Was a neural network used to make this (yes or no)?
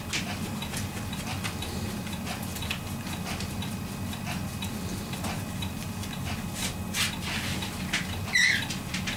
no